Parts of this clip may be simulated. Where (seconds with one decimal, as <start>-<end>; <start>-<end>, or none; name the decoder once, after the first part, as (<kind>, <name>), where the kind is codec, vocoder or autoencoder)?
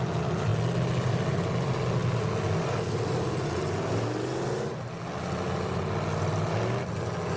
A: none